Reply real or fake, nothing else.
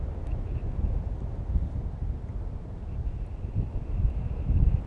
real